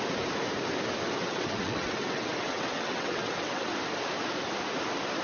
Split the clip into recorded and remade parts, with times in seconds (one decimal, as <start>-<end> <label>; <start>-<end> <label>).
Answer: 0.0-1.2 recorded; 1.2-3.7 remade; 3.7-5.2 recorded